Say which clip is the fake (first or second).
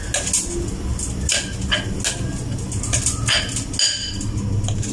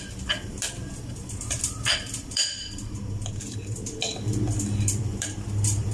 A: second